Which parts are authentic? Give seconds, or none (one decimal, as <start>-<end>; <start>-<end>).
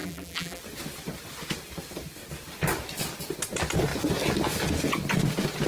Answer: 0.6-5.7